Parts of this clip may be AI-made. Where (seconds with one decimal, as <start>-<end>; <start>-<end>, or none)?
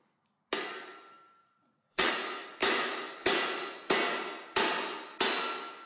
1.4-2.1